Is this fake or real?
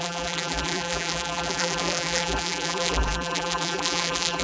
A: fake